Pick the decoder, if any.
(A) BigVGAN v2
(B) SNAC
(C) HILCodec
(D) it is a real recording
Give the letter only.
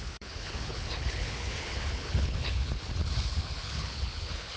C